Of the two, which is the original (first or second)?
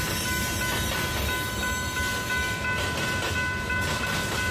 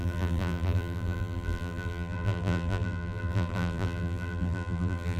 first